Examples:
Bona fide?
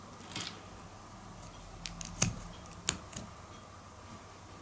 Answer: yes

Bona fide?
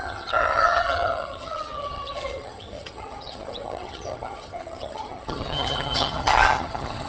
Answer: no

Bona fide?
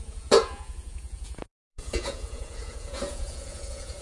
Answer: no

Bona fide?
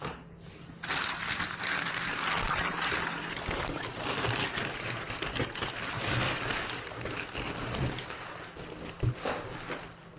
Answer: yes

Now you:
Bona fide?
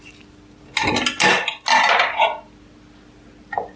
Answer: yes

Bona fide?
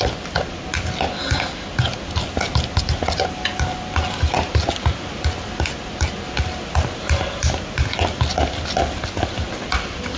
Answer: yes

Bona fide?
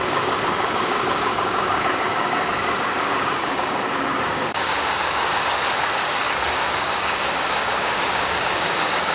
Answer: no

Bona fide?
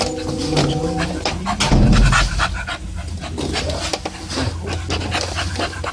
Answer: yes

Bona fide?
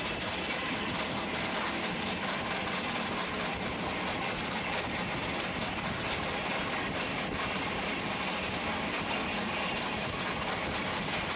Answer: yes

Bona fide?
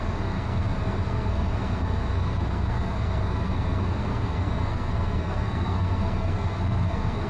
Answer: no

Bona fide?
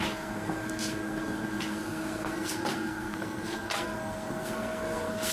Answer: no